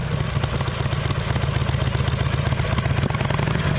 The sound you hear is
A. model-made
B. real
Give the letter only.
B